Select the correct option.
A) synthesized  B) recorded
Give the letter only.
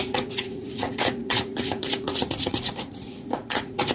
A